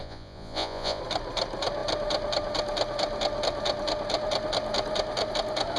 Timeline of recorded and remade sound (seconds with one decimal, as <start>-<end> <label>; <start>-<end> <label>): 0.0-1.0 remade; 1.0-5.8 recorded